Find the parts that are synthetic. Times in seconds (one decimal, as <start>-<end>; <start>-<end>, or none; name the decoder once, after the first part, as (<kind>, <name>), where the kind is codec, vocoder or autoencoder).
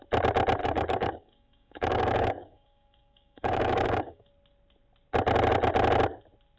0.6-4.3 (codec, DAC)